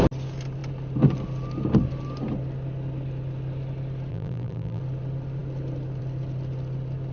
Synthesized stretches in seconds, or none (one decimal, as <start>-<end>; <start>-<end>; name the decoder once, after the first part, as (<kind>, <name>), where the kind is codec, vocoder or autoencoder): 4.1-4.8 (vocoder, BigVGAN v2)